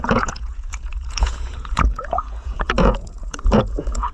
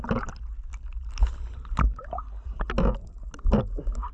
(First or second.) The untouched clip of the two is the second